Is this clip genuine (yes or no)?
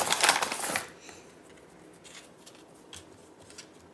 yes